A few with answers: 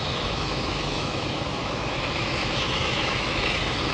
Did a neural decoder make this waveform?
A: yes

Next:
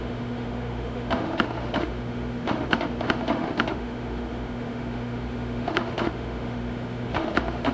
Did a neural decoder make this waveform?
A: yes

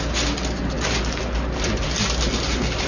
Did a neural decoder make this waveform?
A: no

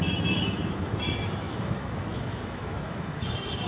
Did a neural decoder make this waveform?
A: yes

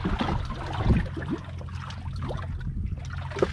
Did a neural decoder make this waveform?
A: no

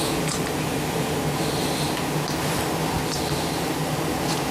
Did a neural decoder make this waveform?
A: no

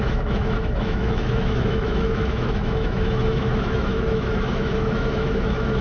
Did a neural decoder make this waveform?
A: yes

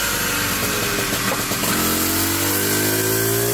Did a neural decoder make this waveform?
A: no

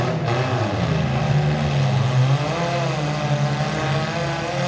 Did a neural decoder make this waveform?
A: no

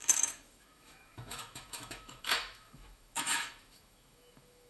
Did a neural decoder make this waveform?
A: yes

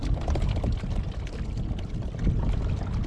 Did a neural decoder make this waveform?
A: no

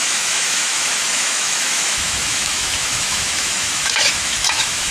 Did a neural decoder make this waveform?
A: yes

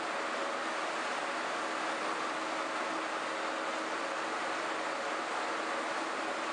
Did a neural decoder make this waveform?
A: no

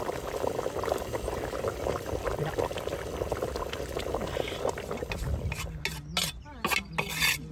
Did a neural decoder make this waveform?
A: no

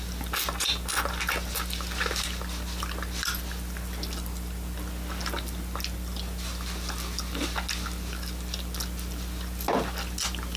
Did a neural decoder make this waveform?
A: no